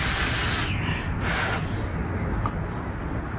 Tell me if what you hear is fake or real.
real